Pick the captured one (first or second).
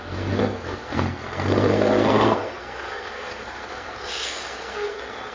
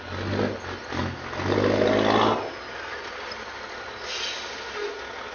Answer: second